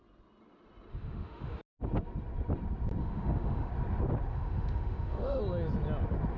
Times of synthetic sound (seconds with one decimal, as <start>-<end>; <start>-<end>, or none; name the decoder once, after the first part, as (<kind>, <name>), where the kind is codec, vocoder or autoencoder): 0.9-1.6 (autoencoder, DAC-VAE); 3.0-3.7; 4.3-5.4